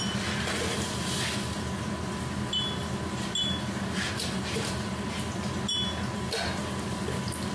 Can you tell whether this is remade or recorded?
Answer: recorded